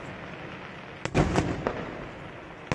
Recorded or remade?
recorded